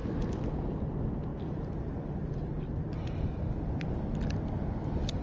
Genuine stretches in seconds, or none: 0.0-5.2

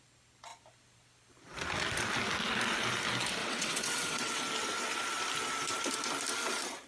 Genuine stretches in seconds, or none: 0.0-3.4; 4.4-6.9

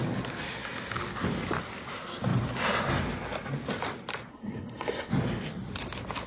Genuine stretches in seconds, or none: 0.0-4.3; 5.1-6.3

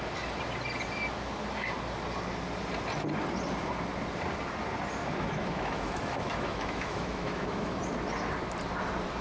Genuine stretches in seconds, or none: 0.0-5.0; 7.8-9.2

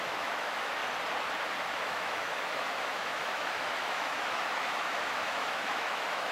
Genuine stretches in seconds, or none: 0.8-1.7

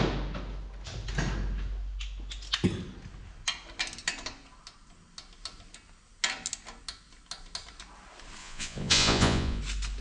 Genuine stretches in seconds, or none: 0.0-8.4; 9.6-10.0

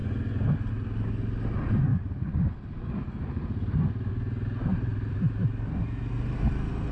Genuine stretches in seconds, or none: 0.0-1.9; 3.0-4.7; 5.8-6.9